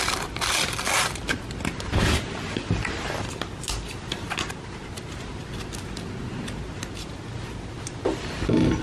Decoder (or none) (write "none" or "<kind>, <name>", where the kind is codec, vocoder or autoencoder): none